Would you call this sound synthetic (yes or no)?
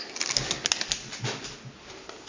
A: no